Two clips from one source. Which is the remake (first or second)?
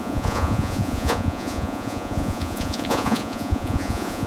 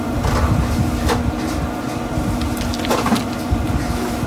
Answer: first